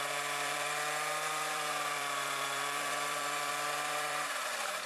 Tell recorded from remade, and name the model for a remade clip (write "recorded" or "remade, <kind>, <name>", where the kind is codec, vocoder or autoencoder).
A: remade, vocoder, BigVGAN v2